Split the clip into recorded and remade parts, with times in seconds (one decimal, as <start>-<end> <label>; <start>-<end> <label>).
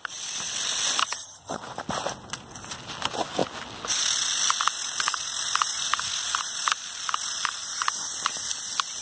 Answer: 0.0-1.0 recorded; 1.0-1.6 remade; 1.6-9.0 recorded